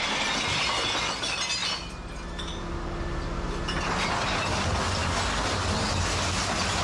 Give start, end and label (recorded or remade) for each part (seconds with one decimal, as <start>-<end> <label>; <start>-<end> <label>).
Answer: 0.0-6.8 recorded